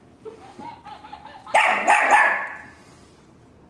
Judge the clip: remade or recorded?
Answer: recorded